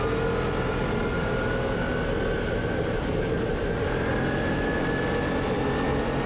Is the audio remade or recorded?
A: recorded